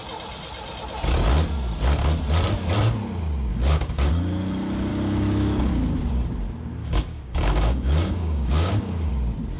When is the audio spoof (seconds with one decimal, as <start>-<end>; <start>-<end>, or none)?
3.5-4.1; 4.9-5.7; 6.8-9.1